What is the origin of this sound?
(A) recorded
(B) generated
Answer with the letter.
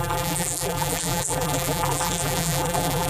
B